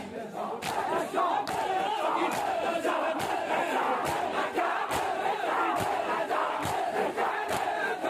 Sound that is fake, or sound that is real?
fake